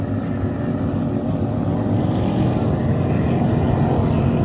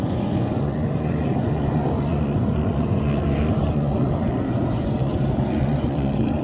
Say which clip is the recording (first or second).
first